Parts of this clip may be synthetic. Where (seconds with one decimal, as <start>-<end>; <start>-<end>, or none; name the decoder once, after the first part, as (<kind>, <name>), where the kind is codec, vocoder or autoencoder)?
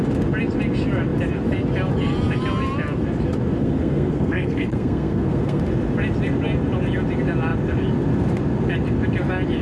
3.6-5.6 (codec, SNAC)